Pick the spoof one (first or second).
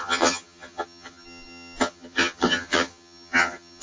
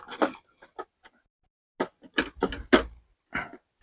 first